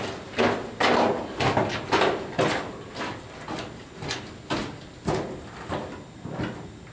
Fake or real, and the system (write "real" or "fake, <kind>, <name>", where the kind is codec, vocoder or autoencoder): real